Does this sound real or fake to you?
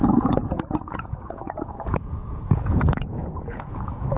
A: fake